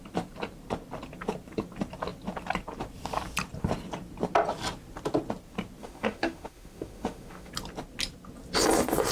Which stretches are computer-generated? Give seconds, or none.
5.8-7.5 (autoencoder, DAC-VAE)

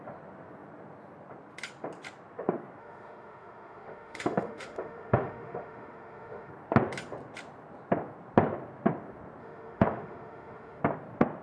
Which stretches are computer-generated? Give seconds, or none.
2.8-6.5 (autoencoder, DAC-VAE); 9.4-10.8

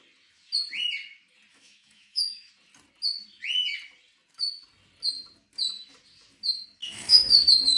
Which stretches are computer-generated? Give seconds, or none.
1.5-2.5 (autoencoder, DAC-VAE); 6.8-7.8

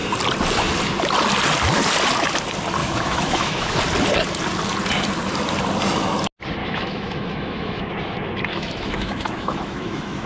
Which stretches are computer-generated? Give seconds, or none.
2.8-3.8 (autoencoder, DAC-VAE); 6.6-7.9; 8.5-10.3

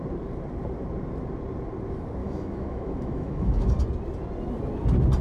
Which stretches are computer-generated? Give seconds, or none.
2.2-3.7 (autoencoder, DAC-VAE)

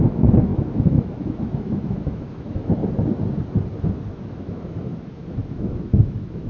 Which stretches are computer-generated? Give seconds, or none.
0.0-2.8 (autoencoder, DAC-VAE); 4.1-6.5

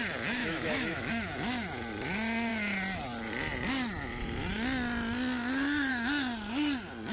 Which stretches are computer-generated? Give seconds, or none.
0.4-1.1 (autoencoder, DAC-VAE)

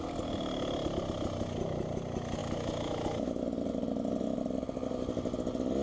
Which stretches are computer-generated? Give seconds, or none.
2.4-3.4 (autoencoder, DAC-VAE)